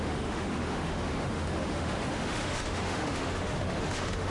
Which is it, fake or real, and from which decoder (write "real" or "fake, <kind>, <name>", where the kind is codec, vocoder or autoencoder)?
fake, autoencoder, DAC-VAE